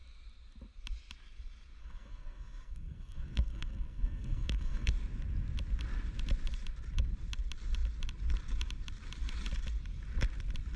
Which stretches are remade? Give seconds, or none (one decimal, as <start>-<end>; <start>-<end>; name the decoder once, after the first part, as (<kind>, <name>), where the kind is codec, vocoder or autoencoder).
1.8-4.9 (codec, SNAC)